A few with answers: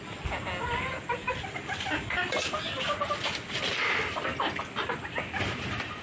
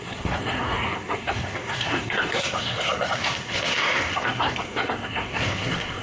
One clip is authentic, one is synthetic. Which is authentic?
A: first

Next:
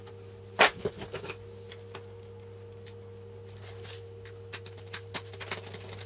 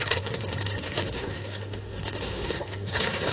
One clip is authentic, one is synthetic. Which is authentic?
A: first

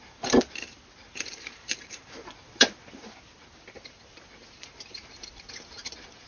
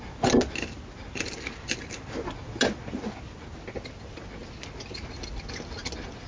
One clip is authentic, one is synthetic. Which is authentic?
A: second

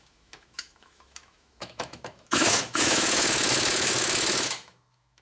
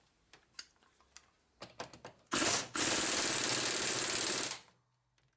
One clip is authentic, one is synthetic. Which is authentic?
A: second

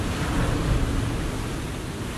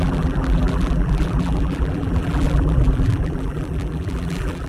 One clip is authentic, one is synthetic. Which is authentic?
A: first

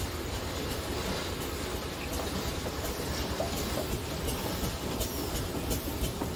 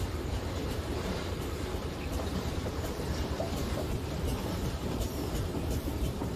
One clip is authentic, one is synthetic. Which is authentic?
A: first